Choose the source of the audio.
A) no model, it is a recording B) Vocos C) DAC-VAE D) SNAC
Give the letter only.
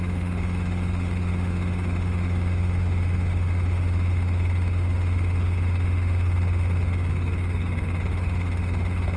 C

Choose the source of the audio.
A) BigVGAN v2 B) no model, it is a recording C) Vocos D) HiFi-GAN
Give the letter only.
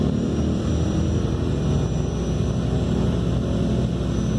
B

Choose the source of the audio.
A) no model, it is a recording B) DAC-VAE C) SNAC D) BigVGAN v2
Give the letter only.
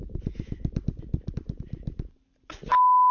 A